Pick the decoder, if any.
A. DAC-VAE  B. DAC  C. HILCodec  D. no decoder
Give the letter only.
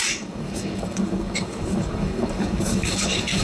B